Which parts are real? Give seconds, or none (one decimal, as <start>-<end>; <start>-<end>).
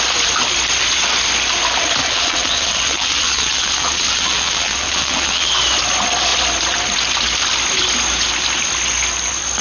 0.0-2.0; 5.5-9.6